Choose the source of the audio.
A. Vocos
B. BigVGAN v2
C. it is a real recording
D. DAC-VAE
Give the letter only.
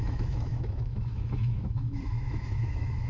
D